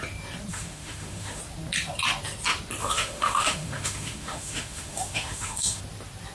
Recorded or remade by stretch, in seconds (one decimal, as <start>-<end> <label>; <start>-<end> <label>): 0.0-0.5 recorded; 0.5-1.4 remade; 1.4-2.8 recorded; 2.8-5.8 remade; 5.8-6.3 recorded